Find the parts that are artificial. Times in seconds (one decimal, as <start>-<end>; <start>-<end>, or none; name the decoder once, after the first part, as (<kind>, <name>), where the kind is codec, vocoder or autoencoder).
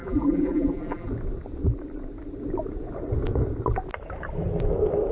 0.0-1.1 (vocoder, BigVGAN v2)